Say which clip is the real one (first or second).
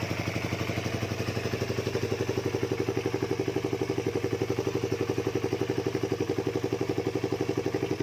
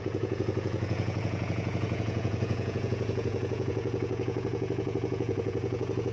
first